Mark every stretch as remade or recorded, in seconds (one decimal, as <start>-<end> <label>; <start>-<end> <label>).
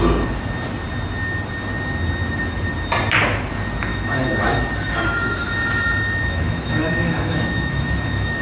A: 0.0-3.9 recorded; 3.9-8.4 remade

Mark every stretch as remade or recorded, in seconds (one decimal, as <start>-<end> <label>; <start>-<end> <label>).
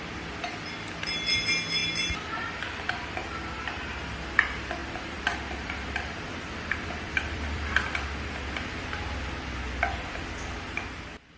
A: 0.0-1.8 recorded; 1.8-3.1 remade; 3.1-4.8 recorded; 4.8-7.7 remade; 7.7-11.4 recorded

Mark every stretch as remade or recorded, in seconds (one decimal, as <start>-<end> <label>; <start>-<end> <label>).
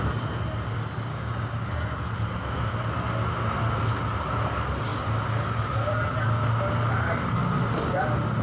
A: 0.0-1.1 recorded; 1.1-1.7 remade; 1.7-8.4 recorded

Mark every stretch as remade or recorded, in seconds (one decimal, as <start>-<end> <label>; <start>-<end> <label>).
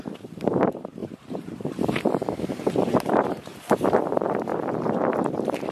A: 0.0-4.5 remade; 4.5-5.2 recorded; 5.2-5.7 remade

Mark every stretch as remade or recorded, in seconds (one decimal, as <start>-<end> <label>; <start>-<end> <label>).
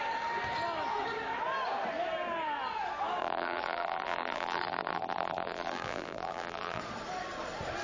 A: 0.0-3.2 recorded; 3.2-6.8 remade; 6.8-7.8 recorded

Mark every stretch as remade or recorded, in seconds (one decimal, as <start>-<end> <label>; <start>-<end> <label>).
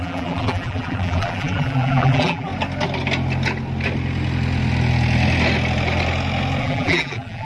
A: 0.0-2.5 remade; 2.5-6.6 recorded; 6.6-7.4 remade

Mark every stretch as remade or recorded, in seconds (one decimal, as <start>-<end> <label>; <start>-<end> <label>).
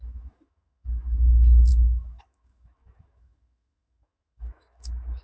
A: 0.0-5.2 remade